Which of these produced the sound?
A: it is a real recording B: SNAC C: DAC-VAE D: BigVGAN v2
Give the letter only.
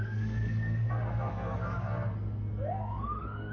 B